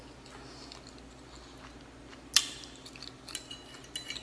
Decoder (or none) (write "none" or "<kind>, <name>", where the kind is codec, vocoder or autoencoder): none